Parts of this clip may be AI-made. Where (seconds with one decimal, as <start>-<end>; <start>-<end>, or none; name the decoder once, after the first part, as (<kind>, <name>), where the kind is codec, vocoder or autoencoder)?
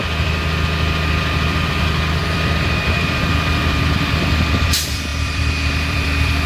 0.0-6.5 (vocoder, BigVGAN v2)